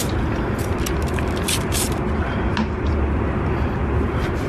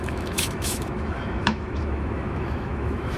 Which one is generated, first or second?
second